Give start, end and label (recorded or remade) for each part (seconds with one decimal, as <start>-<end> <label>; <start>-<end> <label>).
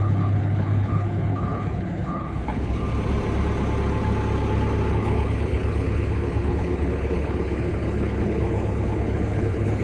0.0-2.8 remade; 2.8-4.9 recorded; 4.9-9.8 remade